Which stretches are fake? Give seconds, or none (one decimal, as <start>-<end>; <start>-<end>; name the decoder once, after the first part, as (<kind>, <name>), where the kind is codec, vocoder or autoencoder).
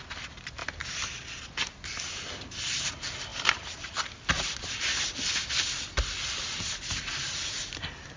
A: none